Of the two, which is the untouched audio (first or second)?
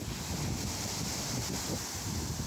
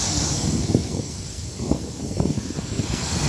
first